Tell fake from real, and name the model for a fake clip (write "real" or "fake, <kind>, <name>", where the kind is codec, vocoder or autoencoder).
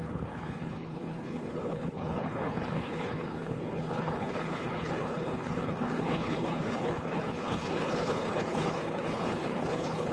fake, codec, HILCodec